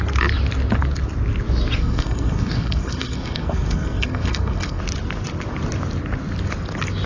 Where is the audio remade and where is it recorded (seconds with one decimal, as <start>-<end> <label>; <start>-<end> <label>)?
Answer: 0.0-1.8 recorded; 1.8-4.8 remade; 4.8-7.1 recorded